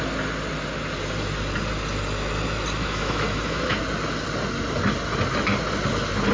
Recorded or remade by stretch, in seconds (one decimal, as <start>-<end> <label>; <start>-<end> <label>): 0.0-2.8 recorded; 2.8-3.8 remade; 3.8-6.3 recorded